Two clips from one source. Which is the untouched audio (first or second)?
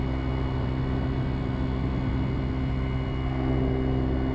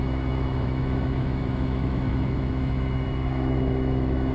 first